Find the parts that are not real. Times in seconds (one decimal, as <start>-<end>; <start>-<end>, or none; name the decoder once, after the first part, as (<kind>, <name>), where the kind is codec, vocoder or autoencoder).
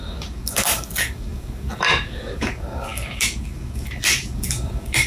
0.0-5.1 (codec, DAC)